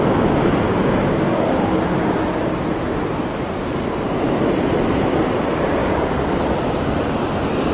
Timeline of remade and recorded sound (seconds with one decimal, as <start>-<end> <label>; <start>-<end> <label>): 0.0-0.7 recorded; 0.7-1.9 remade; 1.9-5.8 recorded; 5.8-6.4 remade; 6.4-7.7 recorded